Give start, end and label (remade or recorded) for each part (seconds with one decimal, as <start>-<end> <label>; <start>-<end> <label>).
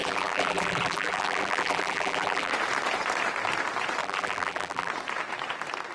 0.0-2.5 remade; 2.5-4.0 recorded; 4.0-4.9 remade; 4.9-5.9 recorded